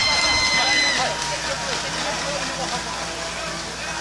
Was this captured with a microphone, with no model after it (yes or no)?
yes